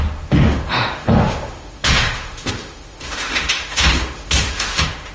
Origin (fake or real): fake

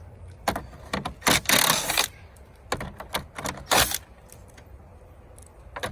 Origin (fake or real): real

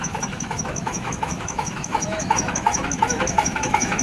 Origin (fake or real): fake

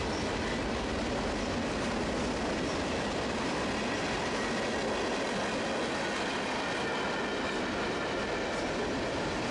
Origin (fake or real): real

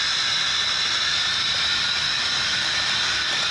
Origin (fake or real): real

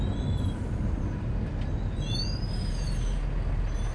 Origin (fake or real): real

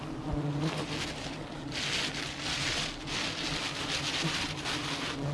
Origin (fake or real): real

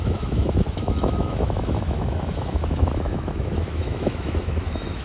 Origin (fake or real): fake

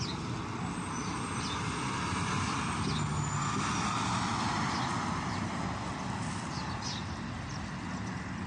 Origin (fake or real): real